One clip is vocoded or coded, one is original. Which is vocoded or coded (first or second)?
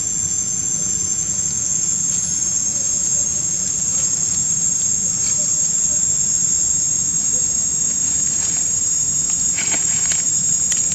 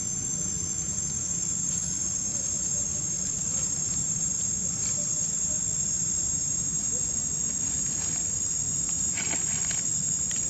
first